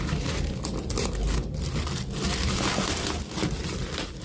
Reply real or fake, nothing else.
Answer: real